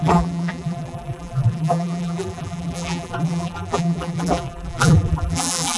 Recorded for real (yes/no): no